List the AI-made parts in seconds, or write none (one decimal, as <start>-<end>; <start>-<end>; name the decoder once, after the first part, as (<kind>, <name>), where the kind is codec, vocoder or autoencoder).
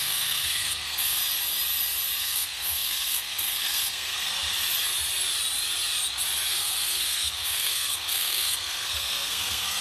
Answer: 0.0-1.2 (codec, SNAC); 2.2-4.3; 6.5-9.8